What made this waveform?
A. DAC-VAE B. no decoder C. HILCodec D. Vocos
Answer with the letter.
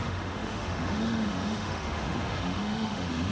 A